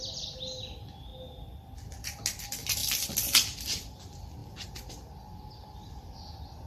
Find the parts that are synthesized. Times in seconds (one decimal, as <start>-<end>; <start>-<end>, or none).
none